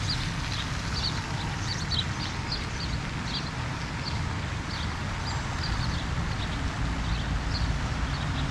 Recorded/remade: recorded